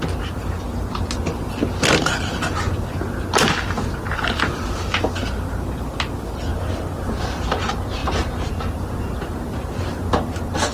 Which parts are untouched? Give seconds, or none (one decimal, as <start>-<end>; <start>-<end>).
0.0-6.5; 7.2-10.7